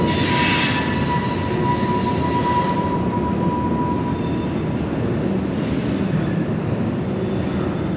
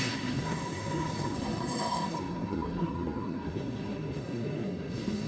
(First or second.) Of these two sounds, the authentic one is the first